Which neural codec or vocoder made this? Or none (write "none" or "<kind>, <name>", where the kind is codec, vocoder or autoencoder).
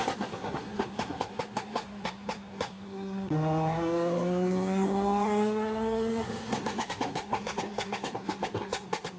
codec, SNAC